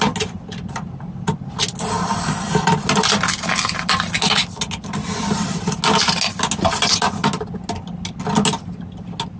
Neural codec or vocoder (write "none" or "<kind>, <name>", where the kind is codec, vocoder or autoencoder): none